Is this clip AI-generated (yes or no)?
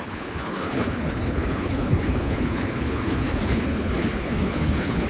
yes